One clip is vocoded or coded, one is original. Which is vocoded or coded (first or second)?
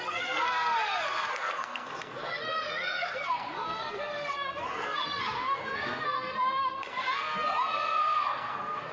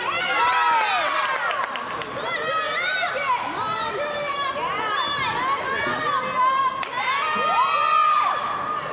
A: first